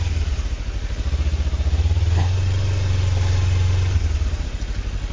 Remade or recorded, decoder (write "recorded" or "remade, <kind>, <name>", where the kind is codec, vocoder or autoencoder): recorded